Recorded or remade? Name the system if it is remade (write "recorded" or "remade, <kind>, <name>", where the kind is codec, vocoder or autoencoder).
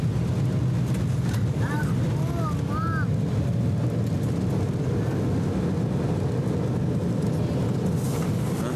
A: recorded